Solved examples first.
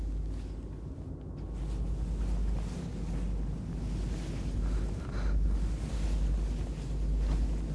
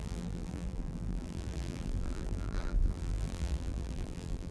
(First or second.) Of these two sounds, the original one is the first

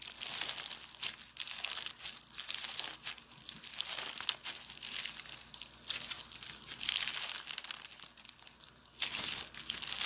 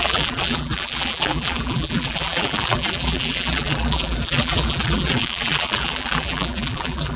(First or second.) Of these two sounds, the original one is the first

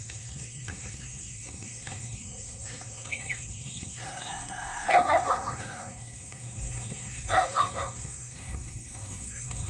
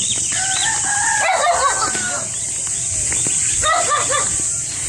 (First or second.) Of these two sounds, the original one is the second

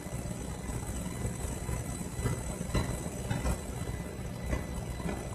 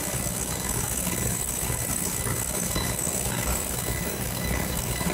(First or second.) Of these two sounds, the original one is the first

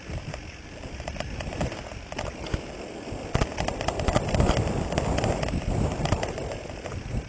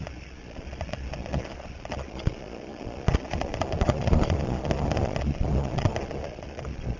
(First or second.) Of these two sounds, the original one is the first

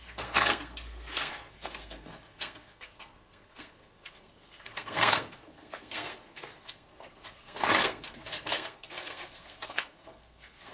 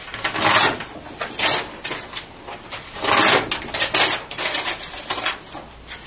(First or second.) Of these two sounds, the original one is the second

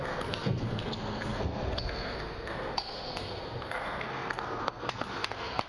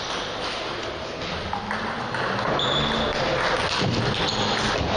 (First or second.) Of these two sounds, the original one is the second